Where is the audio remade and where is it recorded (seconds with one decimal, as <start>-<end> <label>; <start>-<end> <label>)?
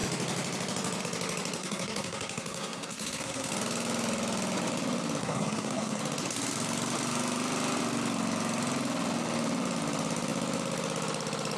0.0-1.6 recorded; 1.6-3.5 remade; 3.5-5.2 recorded; 5.2-6.0 remade; 6.0-11.6 recorded